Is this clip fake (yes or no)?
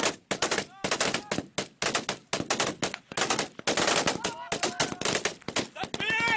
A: no